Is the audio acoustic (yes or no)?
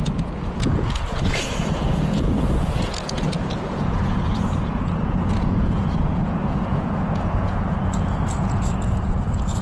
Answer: no